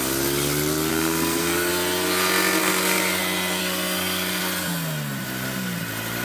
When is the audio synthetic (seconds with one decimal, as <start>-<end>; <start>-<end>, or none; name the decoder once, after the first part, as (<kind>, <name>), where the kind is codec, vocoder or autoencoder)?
0.9-1.7 (codec, SNAC); 2.6-3.2; 3.6-4.4